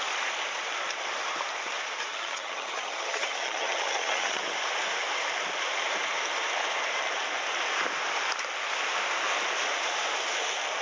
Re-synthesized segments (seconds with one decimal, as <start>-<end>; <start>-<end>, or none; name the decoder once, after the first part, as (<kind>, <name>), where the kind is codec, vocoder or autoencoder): 2.1-4.4 (vocoder, HiFi-GAN)